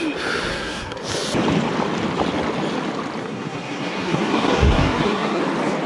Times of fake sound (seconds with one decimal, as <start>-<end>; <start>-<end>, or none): 0.5-1.0; 3.2-5.4